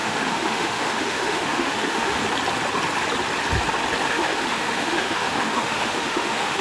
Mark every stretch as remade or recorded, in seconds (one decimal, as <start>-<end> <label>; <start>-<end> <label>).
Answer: 0.0-2.2 remade; 2.2-4.1 recorded; 4.1-6.6 remade

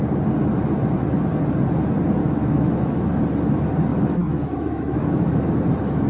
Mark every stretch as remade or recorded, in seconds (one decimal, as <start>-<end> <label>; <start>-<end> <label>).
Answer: 0.0-2.2 recorded; 2.2-3.1 remade; 3.1-3.9 recorded; 3.9-5.5 remade; 5.5-6.1 recorded

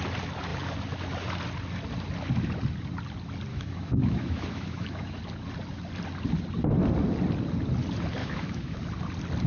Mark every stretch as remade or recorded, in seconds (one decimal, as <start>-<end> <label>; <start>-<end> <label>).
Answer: 0.0-3.5 recorded; 3.5-5.2 remade; 5.2-8.2 recorded; 8.2-8.8 remade; 8.8-9.5 recorded